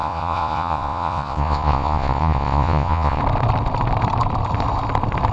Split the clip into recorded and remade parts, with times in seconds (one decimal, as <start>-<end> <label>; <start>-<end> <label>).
0.0-3.2 remade; 3.2-5.3 recorded